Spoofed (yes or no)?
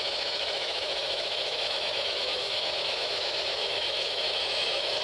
yes